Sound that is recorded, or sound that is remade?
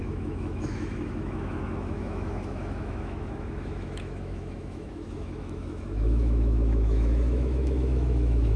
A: remade